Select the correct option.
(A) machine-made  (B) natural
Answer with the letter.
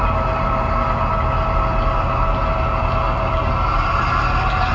B